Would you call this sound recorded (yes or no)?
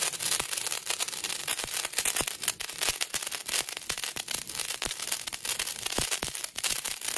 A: yes